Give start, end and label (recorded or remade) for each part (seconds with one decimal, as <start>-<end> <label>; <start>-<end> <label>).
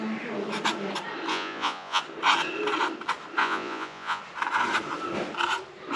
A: 0.0-1.3 recorded; 1.3-2.0 remade; 2.0-3.4 recorded; 3.4-4.2 remade; 4.2-6.0 recorded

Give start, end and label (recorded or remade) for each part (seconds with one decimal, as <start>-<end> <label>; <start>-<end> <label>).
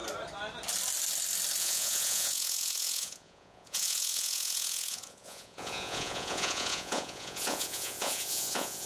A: 0.0-1.6 recorded; 1.6-8.9 remade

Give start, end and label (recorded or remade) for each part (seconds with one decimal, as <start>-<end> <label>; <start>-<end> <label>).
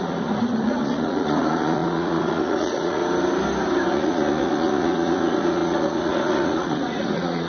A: 0.0-3.0 remade; 3.0-3.9 recorded; 3.9-7.5 remade